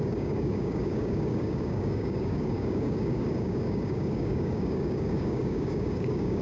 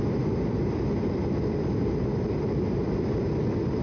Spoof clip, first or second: first